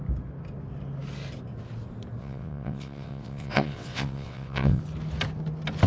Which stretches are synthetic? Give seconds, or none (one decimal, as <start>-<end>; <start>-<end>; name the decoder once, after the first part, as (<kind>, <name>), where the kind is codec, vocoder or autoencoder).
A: 2.2-4.8 (vocoder, WaveNeXt)